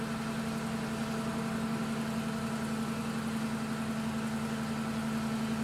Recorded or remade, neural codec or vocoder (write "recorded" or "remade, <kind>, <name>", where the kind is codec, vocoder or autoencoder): recorded